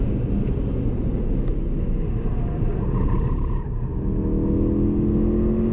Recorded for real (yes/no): yes